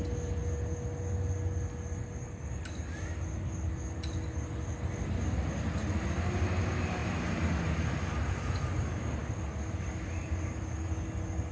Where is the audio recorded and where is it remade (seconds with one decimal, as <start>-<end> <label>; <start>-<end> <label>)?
0.0-11.5 recorded